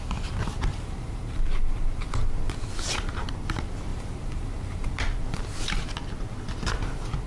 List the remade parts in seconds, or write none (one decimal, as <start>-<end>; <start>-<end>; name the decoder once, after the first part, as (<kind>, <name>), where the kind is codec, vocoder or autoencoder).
0.7-2.1 (vocoder, BigVGAN v2); 3.9-4.9